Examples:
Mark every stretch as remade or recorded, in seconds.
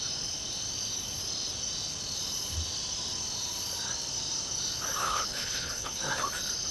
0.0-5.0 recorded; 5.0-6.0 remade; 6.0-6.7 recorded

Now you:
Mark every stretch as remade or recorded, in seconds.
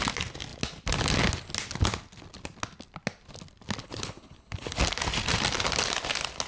0.0-3.8 recorded; 3.8-4.8 remade; 4.8-6.5 recorded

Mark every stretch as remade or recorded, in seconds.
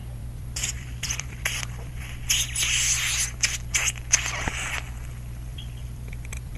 0.0-2.0 remade; 2.0-5.5 recorded; 5.5-6.6 remade